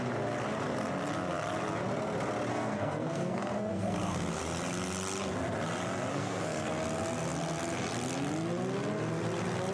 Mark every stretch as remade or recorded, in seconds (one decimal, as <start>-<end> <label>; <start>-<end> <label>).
0.0-2.5 recorded; 2.5-4.4 remade; 4.4-6.1 recorded; 6.1-6.7 remade; 6.7-9.7 recorded